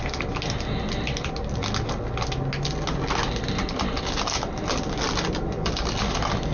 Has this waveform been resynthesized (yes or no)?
no